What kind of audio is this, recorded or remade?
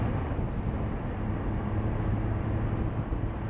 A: recorded